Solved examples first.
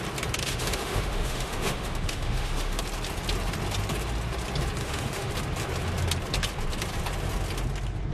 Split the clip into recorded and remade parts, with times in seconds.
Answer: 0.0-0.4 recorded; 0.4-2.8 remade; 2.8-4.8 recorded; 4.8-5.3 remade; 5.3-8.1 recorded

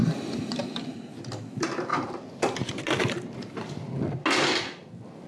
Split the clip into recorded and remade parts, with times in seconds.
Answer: 0.0-0.6 remade; 0.6-1.9 recorded; 1.9-2.4 remade; 2.4-5.3 recorded

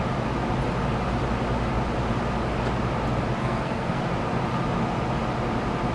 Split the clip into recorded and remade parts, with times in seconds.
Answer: 0.0-3.4 recorded; 3.4-4.0 remade; 4.0-5.9 recorded